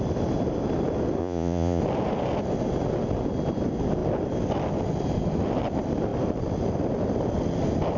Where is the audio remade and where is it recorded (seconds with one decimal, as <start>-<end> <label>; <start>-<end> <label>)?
0.0-1.2 recorded; 1.2-1.8 remade; 1.8-8.0 recorded